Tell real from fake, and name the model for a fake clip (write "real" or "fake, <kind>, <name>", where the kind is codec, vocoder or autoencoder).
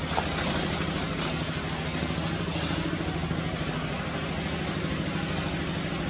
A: real